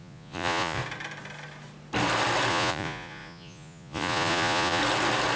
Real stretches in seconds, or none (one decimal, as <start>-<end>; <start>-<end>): 0.8-2.5; 4.8-5.4